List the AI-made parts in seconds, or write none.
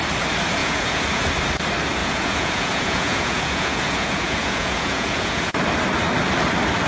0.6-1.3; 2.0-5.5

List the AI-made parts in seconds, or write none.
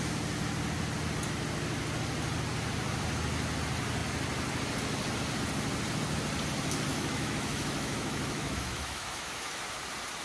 6.9-9.6